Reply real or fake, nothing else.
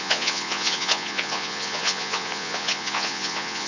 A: fake